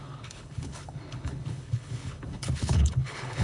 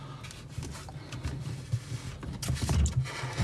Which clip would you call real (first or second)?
second